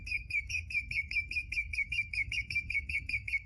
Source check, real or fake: fake